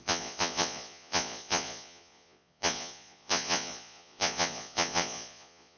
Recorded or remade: remade